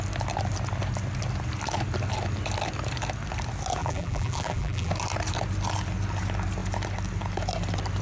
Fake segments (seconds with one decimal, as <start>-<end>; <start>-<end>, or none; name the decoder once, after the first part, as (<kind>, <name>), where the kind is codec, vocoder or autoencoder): 3.8-4.9 (vocoder, BigVGAN v2)